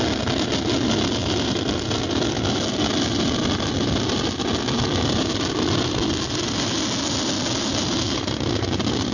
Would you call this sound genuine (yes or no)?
yes